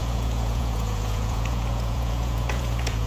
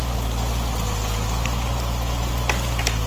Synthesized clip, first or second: first